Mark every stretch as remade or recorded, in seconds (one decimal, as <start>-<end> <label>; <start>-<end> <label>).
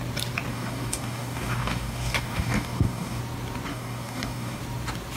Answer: 0.0-0.5 recorded; 0.5-3.2 remade; 3.2-3.7 recorded; 3.7-4.6 remade; 4.6-5.2 recorded